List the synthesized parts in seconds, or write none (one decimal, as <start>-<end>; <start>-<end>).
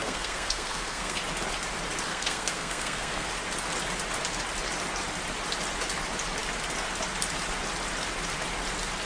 0.0-1.2; 2.1-3.3